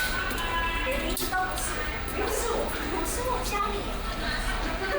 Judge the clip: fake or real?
real